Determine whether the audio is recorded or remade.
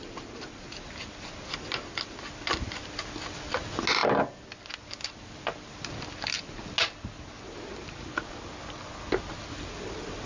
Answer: recorded